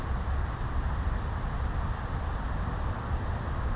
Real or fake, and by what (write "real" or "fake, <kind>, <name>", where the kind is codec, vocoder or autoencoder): real